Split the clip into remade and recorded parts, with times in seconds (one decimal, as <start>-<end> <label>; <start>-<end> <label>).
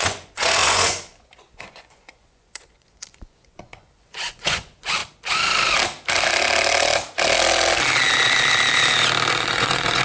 0.0-5.0 remade; 5.0-9.3 recorded; 9.3-10.0 remade